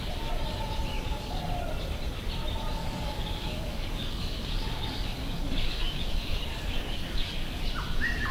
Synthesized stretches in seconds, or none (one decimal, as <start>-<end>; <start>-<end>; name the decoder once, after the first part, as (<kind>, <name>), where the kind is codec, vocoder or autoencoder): 0.9-1.4 (codec, DAC); 2.8-7.6